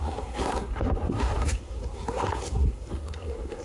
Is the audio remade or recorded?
remade